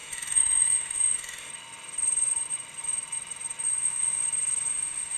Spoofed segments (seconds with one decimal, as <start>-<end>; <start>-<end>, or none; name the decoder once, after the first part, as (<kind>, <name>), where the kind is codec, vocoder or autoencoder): 0.0-1.5 (autoencoder, DAC-VAE); 3.8-4.2; 4.7-5.2